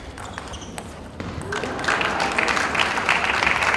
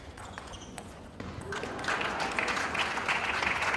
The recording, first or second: first